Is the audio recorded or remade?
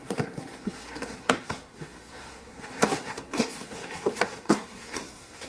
remade